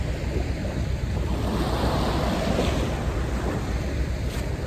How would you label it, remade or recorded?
recorded